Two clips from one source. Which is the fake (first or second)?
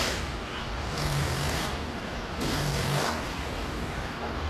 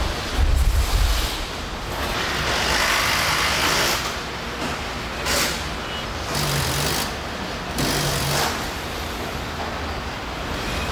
first